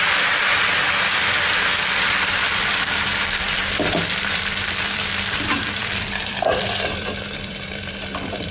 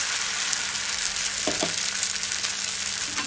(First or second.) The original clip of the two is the second